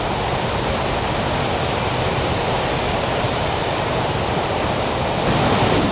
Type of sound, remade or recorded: remade